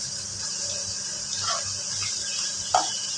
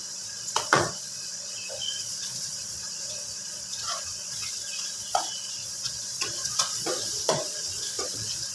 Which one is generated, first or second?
second